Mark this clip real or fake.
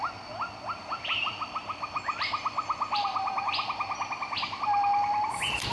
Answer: real